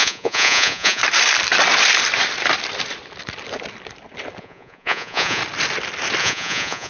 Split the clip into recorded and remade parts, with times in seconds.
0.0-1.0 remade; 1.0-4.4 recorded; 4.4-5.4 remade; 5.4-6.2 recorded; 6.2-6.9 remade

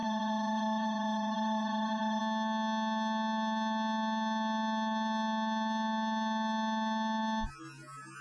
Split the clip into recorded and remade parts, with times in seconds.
0.0-2.2 remade; 2.2-8.2 recorded

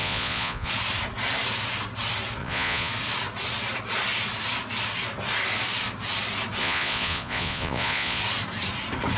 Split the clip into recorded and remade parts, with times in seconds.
0.0-0.7 remade; 0.7-2.4 recorded; 2.4-2.9 remade; 2.9-6.6 recorded; 6.6-8.2 remade; 8.2-9.2 recorded

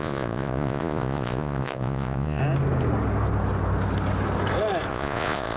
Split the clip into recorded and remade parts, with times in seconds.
0.0-2.4 remade; 2.4-4.9 recorded; 4.9-5.6 remade

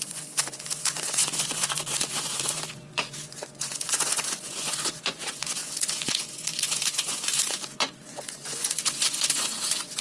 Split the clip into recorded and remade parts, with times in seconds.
0.0-10.0 remade

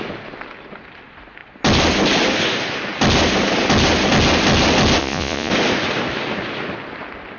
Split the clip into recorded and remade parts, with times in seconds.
0.0-5.0 recorded; 5.0-5.5 remade; 5.5-7.4 recorded

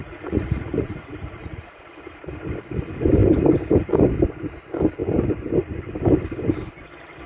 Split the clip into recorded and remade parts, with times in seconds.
0.0-1.8 remade; 1.8-7.3 recorded